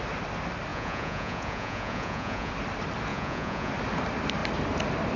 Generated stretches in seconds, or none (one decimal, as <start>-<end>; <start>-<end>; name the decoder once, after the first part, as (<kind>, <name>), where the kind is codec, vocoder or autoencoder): 0.7-2.5 (vocoder, Vocos); 3.1-3.7